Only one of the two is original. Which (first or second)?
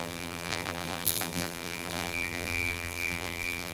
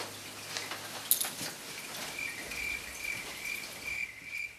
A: second